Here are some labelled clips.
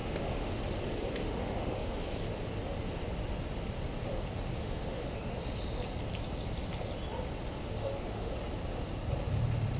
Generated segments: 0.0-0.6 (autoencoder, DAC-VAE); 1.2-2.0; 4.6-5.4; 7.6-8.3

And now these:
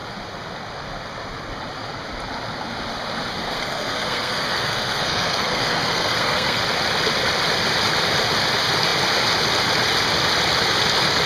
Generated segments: 3.4-6.6 (codec, SNAC)

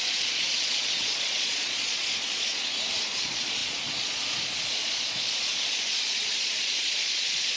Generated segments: 0.0-2.7 (vocoder, Vocos); 3.2-7.6

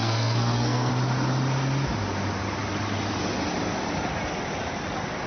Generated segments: 0.0-0.9 (codec, SNAC)

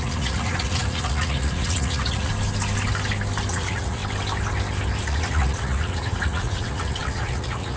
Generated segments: 0.0-2.3 (vocoder, Vocos); 3.5-4.0; 5.0-7.8

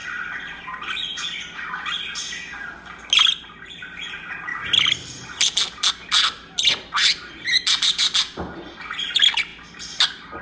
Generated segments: none

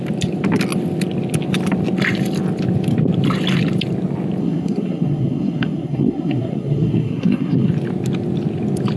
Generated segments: 4.4-7.7 (codec, SNAC)